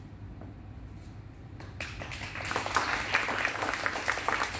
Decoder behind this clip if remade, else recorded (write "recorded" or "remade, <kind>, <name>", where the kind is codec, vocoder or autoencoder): recorded